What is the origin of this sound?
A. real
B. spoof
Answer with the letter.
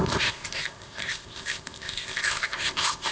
B